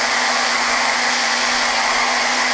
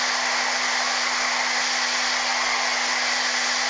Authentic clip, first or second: second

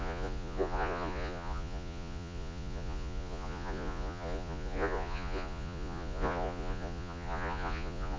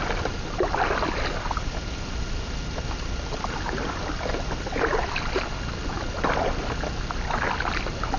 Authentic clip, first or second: second